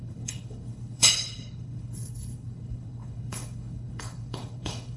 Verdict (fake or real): fake